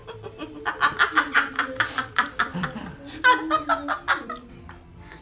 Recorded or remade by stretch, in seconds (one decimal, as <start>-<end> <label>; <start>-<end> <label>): 0.0-3.1 remade; 3.1-4.1 recorded; 4.1-4.6 remade; 4.6-5.2 recorded

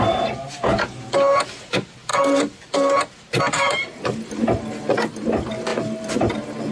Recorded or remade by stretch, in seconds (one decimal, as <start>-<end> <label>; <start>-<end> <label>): 0.0-5.7 recorded; 5.7-6.3 remade; 6.3-6.7 recorded

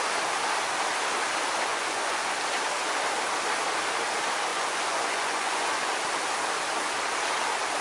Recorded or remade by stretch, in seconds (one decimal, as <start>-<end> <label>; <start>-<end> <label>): 0.0-1.7 recorded; 1.7-2.4 remade; 2.4-4.5 recorded; 4.5-5.9 remade; 5.9-7.8 recorded

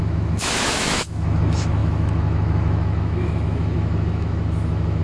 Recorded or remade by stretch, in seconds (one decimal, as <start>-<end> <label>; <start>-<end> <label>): 0.0-5.0 remade